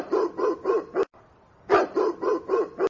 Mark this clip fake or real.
real